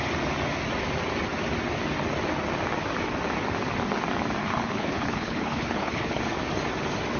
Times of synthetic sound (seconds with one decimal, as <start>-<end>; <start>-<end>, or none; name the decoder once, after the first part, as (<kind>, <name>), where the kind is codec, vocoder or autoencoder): 4.4-6.2 (codec, HILCodec)